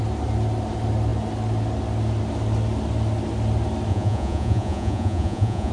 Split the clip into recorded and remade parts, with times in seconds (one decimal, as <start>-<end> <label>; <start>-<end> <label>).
0.0-3.9 recorded; 3.9-5.7 remade